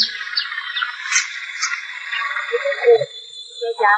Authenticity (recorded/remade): recorded